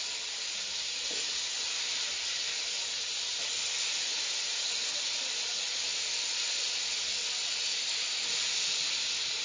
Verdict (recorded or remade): recorded